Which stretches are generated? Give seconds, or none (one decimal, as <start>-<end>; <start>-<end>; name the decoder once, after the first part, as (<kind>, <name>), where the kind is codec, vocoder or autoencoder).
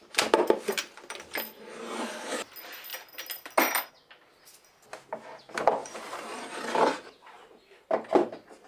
0.8-1.8 (vocoder, BigVGAN v2); 5.8-6.6